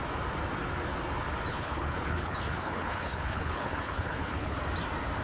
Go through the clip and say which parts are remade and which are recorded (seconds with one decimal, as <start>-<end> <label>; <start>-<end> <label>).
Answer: 0.0-1.5 recorded; 1.5-4.6 remade; 4.6-5.2 recorded

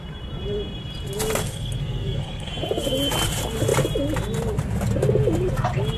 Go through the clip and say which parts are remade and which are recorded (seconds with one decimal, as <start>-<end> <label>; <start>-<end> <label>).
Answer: 0.0-1.4 recorded; 1.4-2.5 remade; 2.5-6.0 recorded

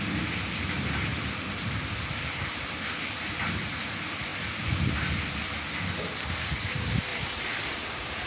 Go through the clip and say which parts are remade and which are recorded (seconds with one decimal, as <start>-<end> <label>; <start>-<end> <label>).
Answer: 0.0-1.1 recorded; 1.1-3.5 remade; 3.5-7.1 recorded; 7.1-8.3 remade

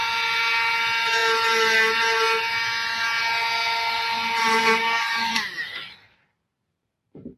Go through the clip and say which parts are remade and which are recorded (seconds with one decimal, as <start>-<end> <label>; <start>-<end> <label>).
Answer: 0.0-4.6 recorded; 4.6-5.3 remade; 5.3-7.4 recorded

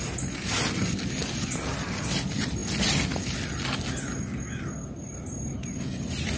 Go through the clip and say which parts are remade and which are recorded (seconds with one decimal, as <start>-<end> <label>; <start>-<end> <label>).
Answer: 0.0-6.4 recorded

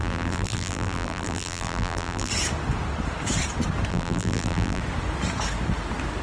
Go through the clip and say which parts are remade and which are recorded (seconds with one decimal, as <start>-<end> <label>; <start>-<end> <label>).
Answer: 0.0-2.3 remade; 2.3-3.9 recorded; 3.9-4.8 remade; 4.8-6.2 recorded